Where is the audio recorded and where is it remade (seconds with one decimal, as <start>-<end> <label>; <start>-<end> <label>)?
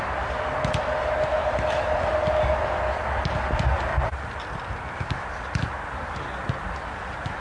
0.0-1.4 recorded; 1.4-1.9 remade; 1.9-3.9 recorded; 3.9-5.1 remade; 5.1-7.4 recorded